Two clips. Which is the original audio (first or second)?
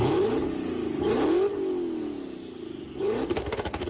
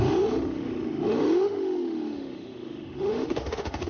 first